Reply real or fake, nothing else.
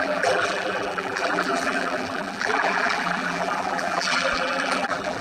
fake